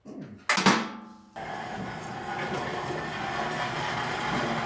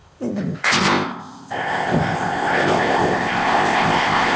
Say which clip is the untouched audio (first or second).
first